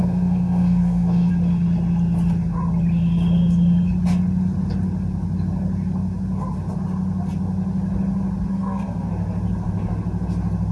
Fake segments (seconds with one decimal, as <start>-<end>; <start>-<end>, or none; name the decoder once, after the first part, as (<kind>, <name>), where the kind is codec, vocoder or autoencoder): 0.0-1.3 (codec, SNAC); 8.5-9.1